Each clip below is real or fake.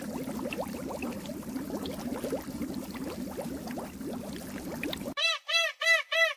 fake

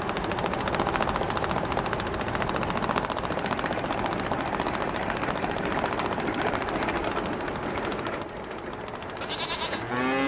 real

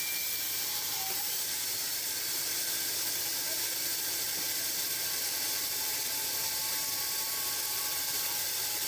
fake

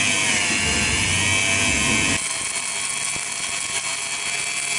real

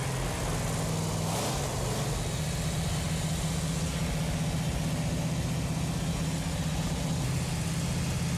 real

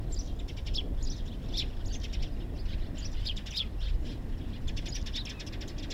real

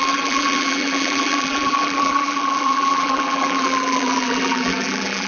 fake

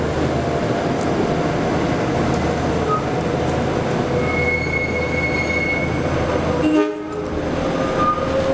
real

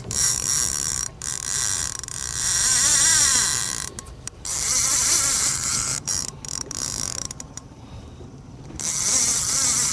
fake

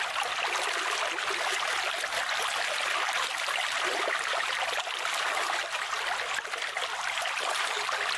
real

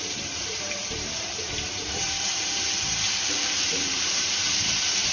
fake